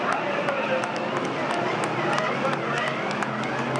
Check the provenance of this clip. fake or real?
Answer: real